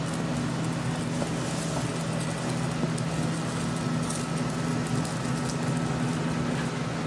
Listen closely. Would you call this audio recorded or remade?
recorded